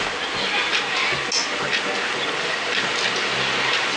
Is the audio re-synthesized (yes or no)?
no